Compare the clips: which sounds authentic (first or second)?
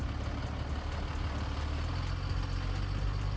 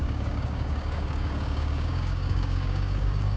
first